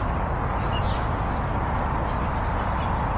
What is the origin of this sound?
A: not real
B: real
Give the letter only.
B